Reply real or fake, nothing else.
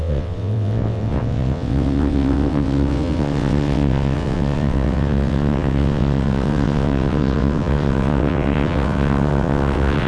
fake